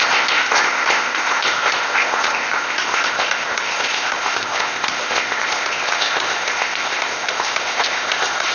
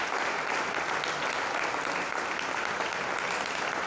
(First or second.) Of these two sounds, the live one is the second